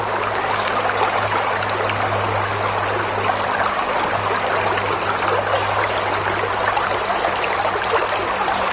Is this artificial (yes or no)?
no